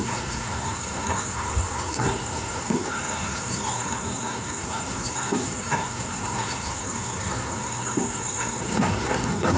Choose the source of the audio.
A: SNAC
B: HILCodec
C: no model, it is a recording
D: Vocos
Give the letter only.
A